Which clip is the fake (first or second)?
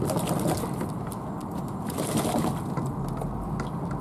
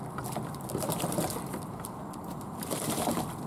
second